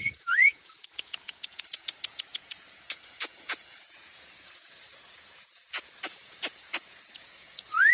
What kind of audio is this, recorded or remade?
remade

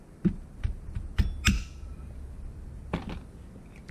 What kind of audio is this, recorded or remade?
recorded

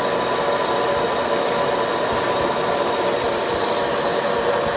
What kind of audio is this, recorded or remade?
recorded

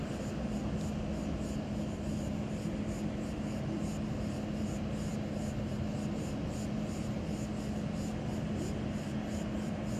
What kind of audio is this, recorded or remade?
recorded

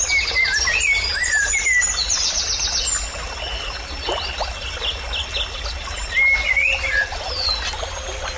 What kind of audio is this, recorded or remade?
recorded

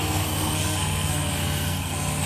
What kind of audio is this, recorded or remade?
remade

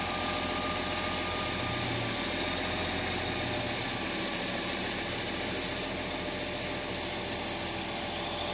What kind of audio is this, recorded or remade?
recorded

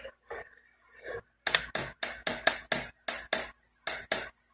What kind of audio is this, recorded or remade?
recorded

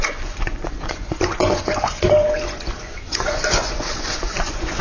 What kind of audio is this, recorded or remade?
remade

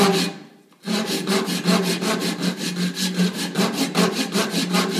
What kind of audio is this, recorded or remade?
recorded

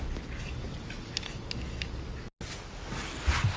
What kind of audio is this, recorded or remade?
recorded